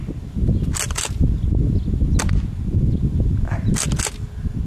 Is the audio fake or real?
real